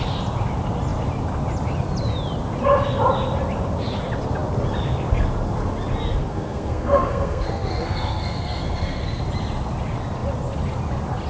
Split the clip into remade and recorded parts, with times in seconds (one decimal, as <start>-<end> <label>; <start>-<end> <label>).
0.0-6.2 recorded; 6.2-9.2 remade; 9.2-11.3 recorded